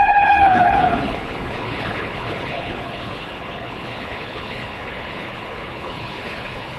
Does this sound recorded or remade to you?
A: remade